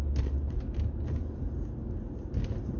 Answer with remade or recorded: recorded